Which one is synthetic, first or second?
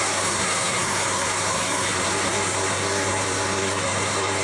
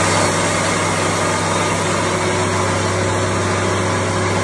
first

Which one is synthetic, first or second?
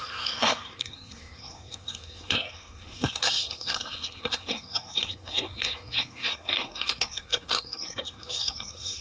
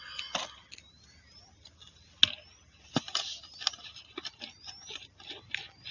first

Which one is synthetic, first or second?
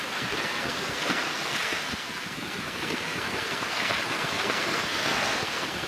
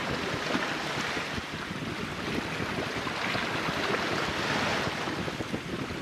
first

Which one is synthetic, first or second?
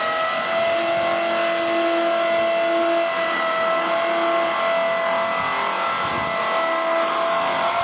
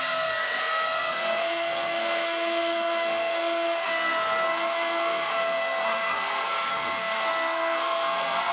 second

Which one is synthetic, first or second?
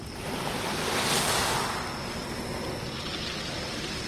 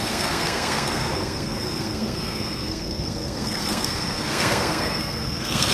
second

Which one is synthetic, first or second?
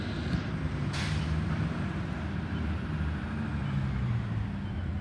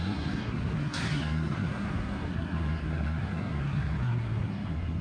second